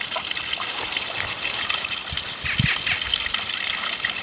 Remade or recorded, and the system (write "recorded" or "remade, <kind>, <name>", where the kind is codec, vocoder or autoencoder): recorded